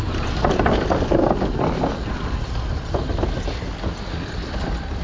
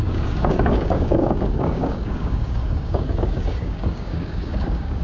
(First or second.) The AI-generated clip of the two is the second